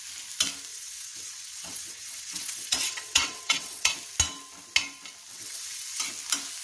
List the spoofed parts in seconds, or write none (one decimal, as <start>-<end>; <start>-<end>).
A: 0.7-3.9; 5.3-6.0